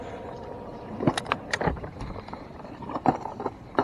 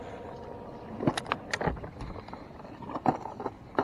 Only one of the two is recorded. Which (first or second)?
second